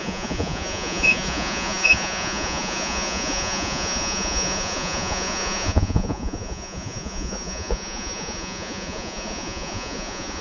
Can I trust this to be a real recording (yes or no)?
no